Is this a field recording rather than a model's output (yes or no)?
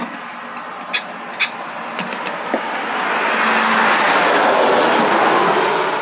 yes